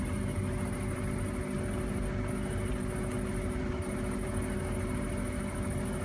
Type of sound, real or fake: real